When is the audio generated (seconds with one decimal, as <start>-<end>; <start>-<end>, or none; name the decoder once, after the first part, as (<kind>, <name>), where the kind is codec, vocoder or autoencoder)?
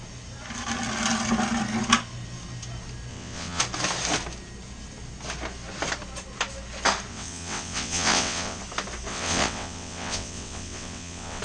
3.1-3.6 (vocoder, WaveNeXt); 7.1-8.6; 9.1-11.4